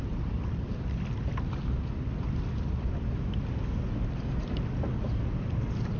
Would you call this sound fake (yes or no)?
no